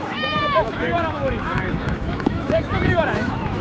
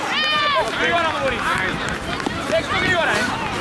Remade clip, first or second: first